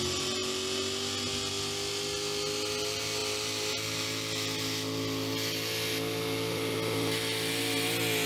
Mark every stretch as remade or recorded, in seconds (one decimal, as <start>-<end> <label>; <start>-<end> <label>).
0.0-8.3 recorded